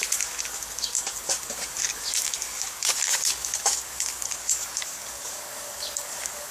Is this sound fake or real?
fake